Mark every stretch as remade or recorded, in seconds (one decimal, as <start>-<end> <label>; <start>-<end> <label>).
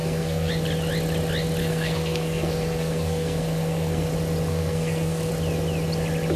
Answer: 0.0-0.5 remade; 0.5-1.6 recorded; 1.6-4.1 remade; 4.1-4.5 recorded; 4.5-5.3 remade; 5.3-6.4 recorded